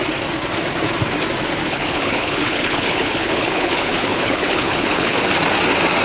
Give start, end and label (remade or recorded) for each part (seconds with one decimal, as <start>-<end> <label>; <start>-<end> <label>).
0.0-1.6 recorded; 1.6-5.2 remade; 5.2-6.0 recorded